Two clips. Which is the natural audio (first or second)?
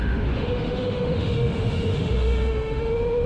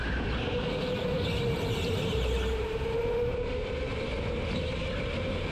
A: second